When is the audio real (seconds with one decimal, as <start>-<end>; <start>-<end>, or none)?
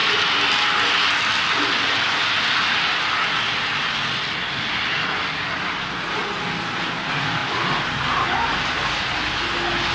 0.0-9.9